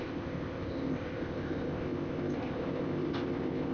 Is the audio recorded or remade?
remade